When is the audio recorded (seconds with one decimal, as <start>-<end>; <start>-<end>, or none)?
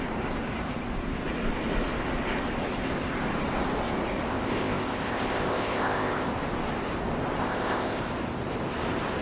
0.0-4.3; 6.3-7.4; 8.0-9.2